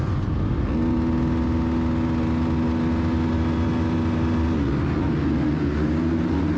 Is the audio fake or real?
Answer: real